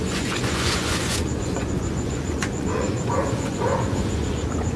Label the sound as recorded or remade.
remade